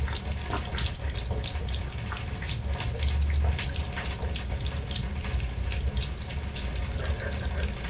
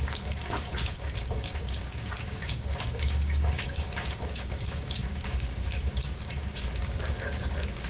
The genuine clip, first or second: first